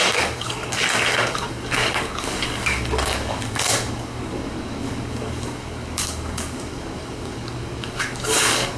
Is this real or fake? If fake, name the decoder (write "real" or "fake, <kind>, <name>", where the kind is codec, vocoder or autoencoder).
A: fake, codec, DAC